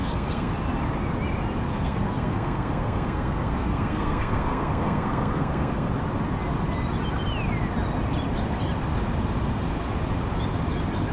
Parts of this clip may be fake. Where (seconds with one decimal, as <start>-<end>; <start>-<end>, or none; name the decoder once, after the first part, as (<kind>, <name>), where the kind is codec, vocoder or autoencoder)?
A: 0.0-0.5 (codec, SNAC); 1.7-5.9